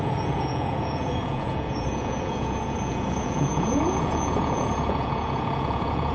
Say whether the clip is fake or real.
fake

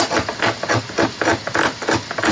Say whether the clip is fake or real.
real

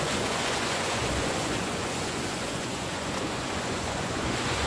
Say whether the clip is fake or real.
fake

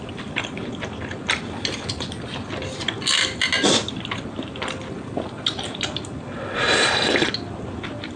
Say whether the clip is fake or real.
real